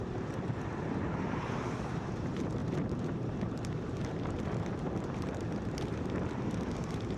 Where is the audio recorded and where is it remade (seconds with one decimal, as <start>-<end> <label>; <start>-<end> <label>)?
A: 0.0-7.2 remade